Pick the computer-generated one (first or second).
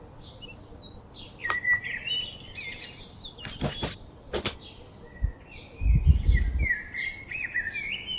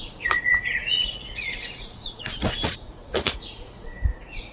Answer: second